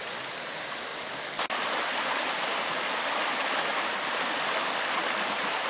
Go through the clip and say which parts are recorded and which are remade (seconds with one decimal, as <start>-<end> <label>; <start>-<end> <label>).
0.0-5.7 recorded